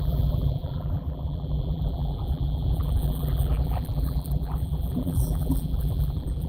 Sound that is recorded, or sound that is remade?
remade